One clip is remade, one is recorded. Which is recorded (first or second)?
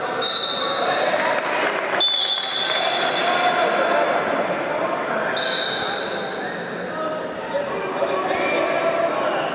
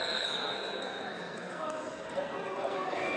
first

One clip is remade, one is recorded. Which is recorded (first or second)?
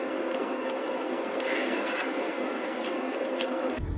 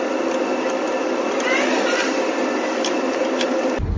second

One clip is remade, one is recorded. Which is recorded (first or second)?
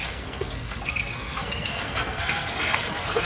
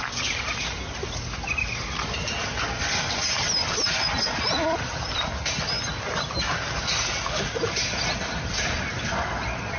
second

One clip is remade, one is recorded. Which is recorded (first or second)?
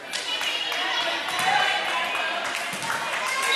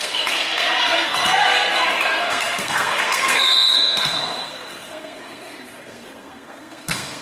first